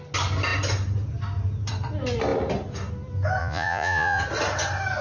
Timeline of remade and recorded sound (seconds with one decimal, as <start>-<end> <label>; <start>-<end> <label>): 0.0-3.4 recorded; 3.4-4.2 remade; 4.2-5.0 recorded